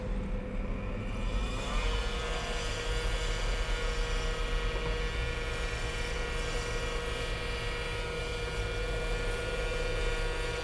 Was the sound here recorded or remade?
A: recorded